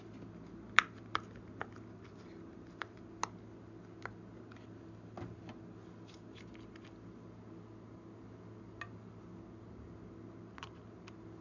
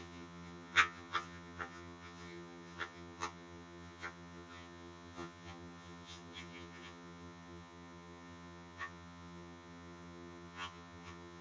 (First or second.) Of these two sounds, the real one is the first